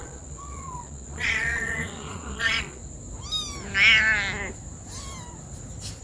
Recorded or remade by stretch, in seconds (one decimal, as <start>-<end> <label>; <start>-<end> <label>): 0.0-2.8 remade; 2.8-6.0 recorded